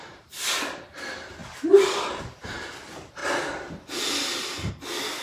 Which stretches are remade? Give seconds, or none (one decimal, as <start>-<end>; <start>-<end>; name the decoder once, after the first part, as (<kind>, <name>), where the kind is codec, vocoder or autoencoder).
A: none